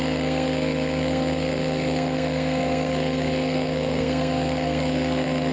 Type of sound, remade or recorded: remade